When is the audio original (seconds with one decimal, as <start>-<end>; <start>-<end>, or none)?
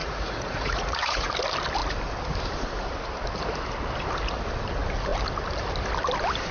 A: 1.3-6.5